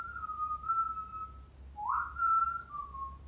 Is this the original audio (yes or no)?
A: yes